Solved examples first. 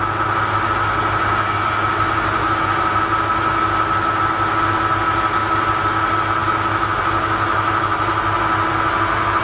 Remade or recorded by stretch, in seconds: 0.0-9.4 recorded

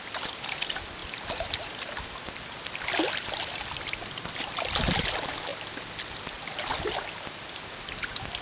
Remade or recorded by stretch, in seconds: 0.0-8.4 recorded

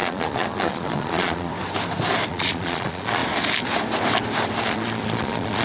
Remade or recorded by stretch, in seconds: 0.0-1.5 remade; 1.5-2.3 recorded; 2.3-3.2 remade; 3.2-4.6 recorded; 4.6-5.6 remade

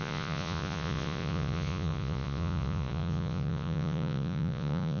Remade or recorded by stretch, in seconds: 0.0-5.0 remade

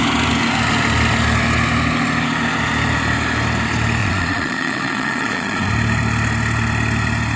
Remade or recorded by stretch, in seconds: 0.0-4.0 recorded; 4.0-5.7 remade; 5.7-7.4 recorded

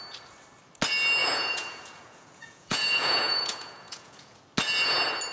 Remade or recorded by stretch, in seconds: 0.0-1.2 recorded; 1.2-4.4 remade; 4.4-5.3 recorded

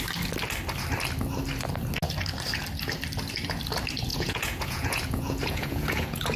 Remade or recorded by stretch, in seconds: 0.0-4.1 recorded; 4.1-6.4 remade